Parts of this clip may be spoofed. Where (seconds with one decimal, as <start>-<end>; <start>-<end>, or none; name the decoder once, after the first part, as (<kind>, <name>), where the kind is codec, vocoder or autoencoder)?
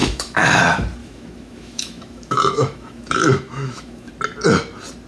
0.0-0.6 (autoencoder, DAC-VAE); 1.0-4.1